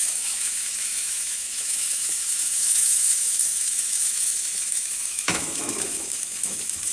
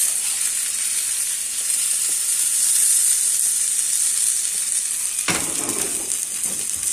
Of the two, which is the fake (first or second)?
first